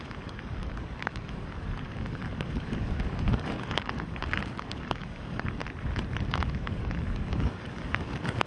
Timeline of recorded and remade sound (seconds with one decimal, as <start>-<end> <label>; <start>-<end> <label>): 0.0-5.6 remade; 5.6-6.3 recorded; 6.3-8.5 remade